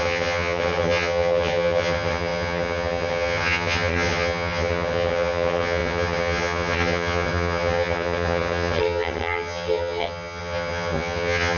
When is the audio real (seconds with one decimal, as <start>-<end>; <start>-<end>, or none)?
none